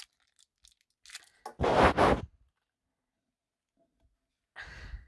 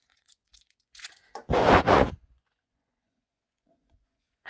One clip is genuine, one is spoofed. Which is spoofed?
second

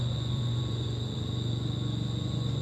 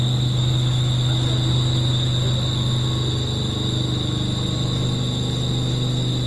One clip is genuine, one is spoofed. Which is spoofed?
first